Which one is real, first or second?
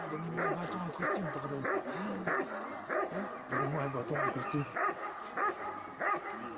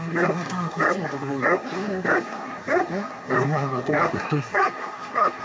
first